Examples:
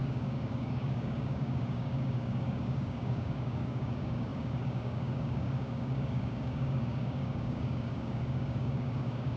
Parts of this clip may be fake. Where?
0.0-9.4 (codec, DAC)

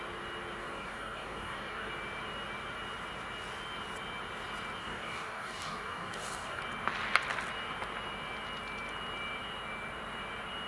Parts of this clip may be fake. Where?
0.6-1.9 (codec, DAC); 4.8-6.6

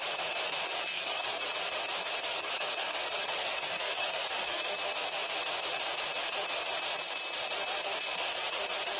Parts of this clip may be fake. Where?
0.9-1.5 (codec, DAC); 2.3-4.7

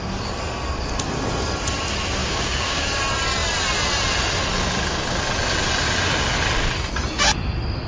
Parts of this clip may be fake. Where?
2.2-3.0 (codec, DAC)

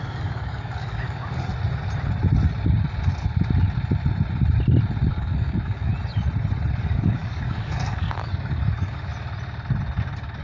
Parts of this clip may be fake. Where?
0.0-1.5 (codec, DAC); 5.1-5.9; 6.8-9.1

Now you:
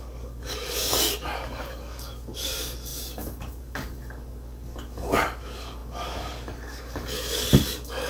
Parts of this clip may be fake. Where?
0.0-8.1 (codec, DAC)

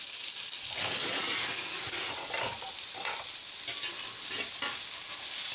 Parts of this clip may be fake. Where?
none